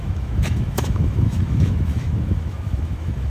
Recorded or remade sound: remade